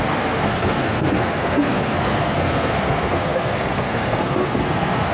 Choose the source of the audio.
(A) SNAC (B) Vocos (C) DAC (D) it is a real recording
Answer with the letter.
A